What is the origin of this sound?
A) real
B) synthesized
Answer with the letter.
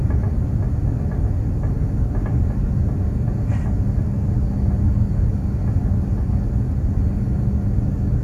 A